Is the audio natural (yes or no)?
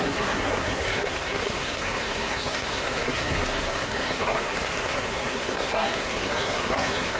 no